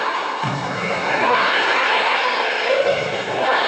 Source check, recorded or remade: remade